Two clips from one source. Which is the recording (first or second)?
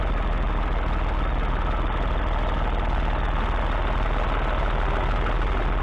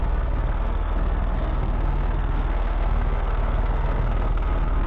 first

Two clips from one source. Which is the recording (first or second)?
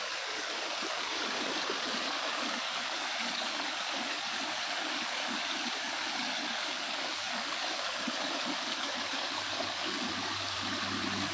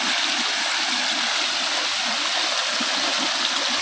second